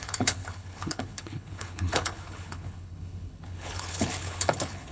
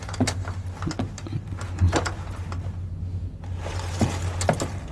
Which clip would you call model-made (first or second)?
first